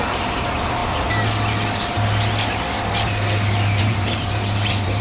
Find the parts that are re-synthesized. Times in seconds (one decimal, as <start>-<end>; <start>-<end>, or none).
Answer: 0.0-0.8; 3.8-5.0